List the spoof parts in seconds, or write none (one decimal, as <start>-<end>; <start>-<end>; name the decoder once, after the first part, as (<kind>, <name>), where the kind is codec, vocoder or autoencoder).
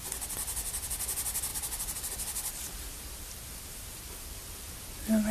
1.5-4.7 (vocoder, BigVGAN v2)